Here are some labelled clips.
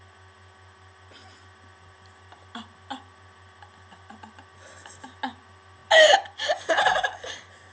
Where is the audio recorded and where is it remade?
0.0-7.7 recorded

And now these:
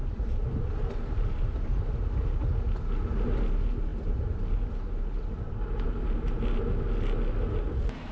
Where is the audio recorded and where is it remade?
0.0-2.1 remade; 2.1-8.1 recorded

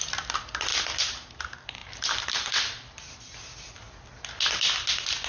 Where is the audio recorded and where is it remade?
0.0-1.8 recorded; 1.8-3.2 remade; 3.2-5.3 recorded

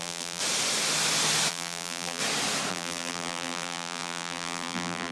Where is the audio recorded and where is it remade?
0.0-0.4 remade; 0.4-1.5 recorded; 1.5-2.2 remade; 2.2-2.7 recorded; 2.7-5.1 remade

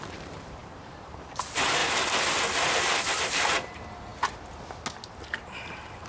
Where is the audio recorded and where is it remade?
0.0-1.8 remade; 1.8-3.3 recorded; 3.3-4.1 remade; 4.1-5.1 recorded; 5.1-6.1 remade